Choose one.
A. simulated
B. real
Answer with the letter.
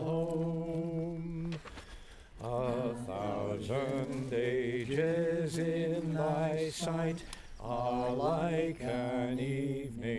B